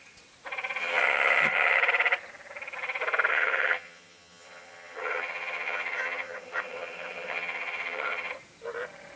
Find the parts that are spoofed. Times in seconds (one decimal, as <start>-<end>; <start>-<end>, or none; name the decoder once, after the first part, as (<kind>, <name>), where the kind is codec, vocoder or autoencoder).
0.8-1.8 (vocoder, HiFi-GAN); 3.3-8.3